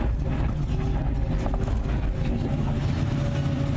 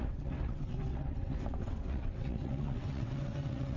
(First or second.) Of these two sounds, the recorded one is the first